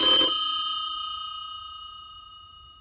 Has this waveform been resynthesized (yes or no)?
yes